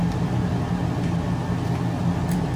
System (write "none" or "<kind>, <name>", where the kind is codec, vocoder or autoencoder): none